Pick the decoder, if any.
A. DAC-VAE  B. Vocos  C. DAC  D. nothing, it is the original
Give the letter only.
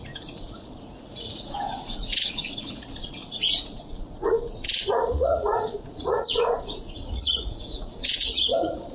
B